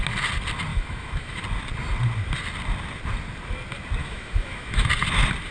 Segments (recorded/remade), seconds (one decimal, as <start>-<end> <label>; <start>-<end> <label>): 0.0-0.7 recorded; 0.7-1.4 remade; 1.4-4.0 recorded; 4.0-4.9 remade; 4.9-5.5 recorded